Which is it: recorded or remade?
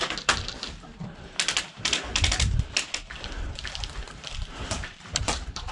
remade